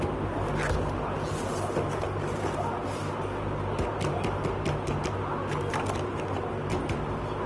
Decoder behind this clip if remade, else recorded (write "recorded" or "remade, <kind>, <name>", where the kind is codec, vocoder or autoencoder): recorded